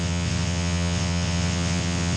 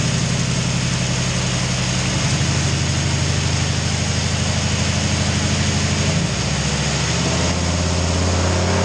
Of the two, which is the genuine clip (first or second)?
second